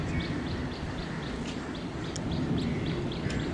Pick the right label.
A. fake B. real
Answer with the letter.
B